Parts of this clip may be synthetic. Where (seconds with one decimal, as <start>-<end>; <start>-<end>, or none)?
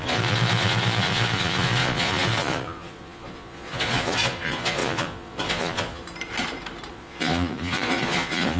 0.0-6.0; 6.9-8.6